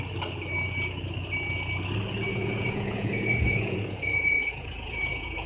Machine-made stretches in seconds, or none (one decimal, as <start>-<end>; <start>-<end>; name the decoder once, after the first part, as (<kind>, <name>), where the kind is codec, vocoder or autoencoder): 2.3-5.5 (vocoder, Vocos)